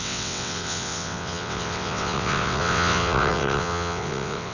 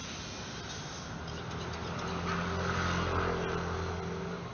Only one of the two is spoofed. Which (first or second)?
first